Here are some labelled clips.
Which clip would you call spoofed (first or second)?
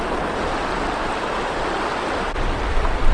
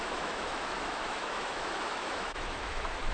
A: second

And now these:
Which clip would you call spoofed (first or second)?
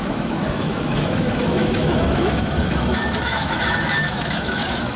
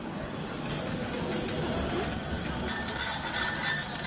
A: first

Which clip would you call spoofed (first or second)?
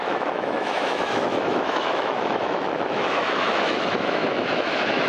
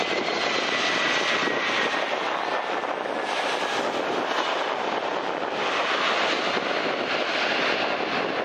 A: first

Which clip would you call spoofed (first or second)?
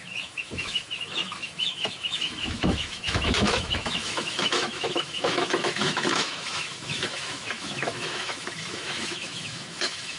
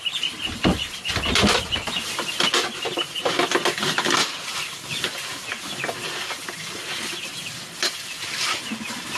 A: first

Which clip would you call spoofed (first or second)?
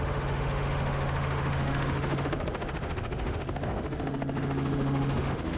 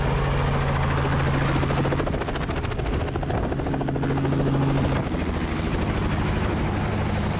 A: first